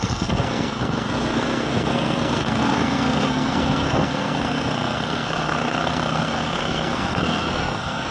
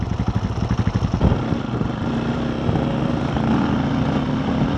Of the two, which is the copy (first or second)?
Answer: first